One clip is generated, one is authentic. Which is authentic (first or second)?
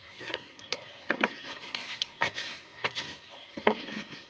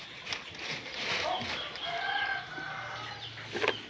second